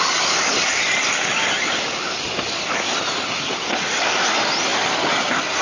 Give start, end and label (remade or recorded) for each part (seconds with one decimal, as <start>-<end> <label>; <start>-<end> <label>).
0.0-5.6 recorded